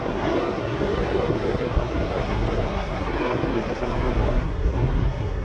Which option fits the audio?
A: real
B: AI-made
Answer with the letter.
B